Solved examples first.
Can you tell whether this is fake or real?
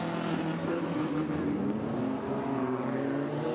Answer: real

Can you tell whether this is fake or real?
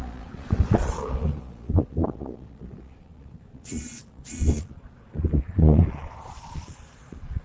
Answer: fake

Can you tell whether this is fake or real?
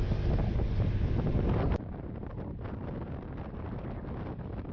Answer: real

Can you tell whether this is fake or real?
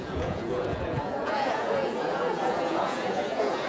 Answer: fake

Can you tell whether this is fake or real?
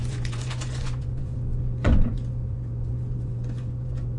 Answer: fake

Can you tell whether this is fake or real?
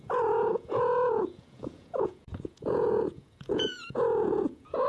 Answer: fake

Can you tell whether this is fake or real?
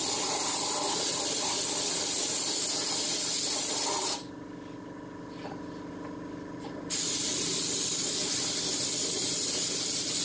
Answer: real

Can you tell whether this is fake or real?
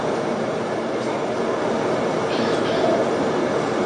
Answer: real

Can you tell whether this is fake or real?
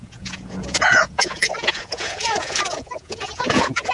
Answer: fake